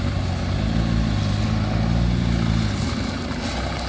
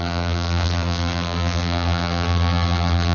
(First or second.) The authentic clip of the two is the first